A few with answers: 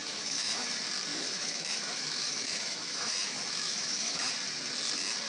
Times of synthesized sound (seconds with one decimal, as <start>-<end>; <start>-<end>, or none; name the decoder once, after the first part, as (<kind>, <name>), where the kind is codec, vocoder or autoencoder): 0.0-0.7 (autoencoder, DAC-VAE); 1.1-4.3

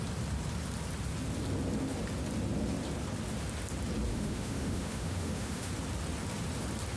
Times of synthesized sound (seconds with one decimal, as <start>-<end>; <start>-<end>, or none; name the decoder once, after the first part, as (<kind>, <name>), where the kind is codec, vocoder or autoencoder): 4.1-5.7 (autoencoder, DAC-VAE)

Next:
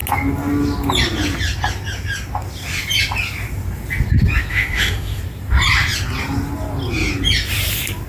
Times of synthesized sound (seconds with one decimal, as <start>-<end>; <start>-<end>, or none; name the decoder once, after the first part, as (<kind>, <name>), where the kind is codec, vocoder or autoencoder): 4.5-5.2 (autoencoder, DAC-VAE)